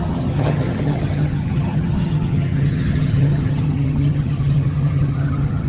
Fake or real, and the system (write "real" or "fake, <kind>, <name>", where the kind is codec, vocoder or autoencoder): fake, vocoder, HiFi-GAN